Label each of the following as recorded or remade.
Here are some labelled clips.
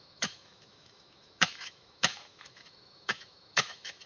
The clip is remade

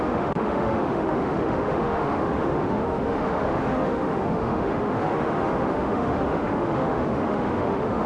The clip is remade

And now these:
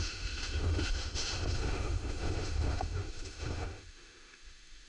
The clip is remade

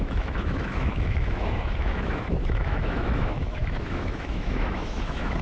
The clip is remade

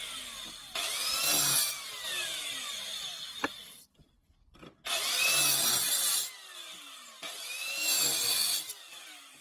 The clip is recorded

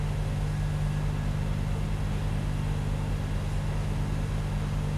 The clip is recorded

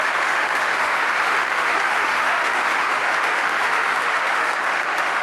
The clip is remade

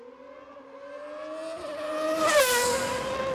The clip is recorded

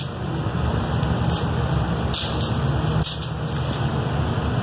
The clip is recorded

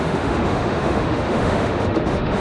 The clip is remade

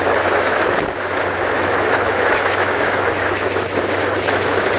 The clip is remade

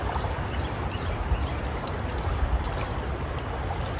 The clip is recorded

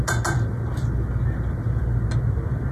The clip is recorded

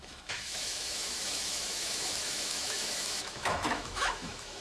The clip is remade